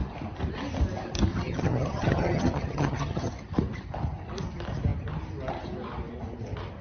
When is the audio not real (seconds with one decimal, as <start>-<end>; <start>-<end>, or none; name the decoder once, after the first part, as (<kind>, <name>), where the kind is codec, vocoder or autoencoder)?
1.3-3.3 (vocoder, HiFi-GAN)